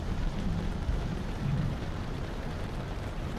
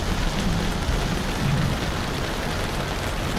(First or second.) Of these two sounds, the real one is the second